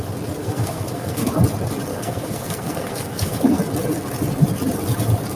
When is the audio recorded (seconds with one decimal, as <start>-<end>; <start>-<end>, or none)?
0.0-0.4; 1.3-1.9; 3.6-5.4